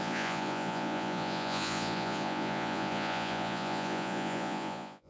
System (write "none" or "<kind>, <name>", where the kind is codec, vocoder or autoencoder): vocoder, Vocos